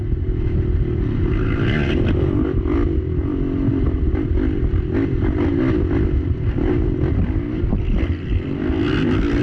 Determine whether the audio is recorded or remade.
recorded